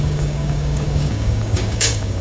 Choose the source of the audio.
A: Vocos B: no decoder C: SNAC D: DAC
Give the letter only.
D